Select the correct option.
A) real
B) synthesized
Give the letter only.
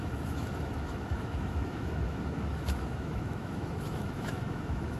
B